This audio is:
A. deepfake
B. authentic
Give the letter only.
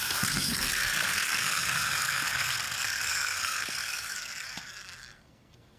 A